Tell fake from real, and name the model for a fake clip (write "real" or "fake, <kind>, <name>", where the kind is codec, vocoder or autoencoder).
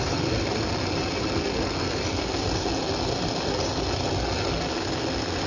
real